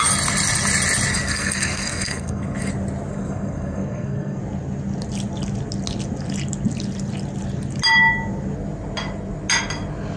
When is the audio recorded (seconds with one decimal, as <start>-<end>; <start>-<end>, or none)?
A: 0.0-1.1; 2.7-3.1; 4.4-10.2